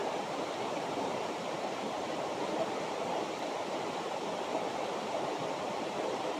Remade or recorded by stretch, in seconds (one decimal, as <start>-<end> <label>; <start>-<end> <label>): 0.0-0.7 recorded; 0.7-6.4 remade